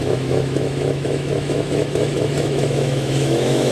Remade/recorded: remade